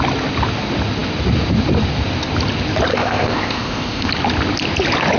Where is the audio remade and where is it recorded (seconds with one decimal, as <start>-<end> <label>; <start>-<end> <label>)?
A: 0.0-2.9 recorded; 2.9-4.1 remade; 4.1-5.2 recorded